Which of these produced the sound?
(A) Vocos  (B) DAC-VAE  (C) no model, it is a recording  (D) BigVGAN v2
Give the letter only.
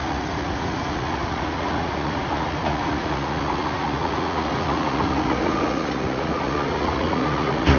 A